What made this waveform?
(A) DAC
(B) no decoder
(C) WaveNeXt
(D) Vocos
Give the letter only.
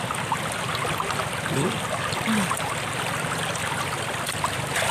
B